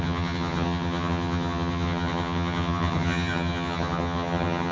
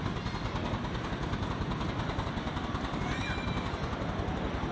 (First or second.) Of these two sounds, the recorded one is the second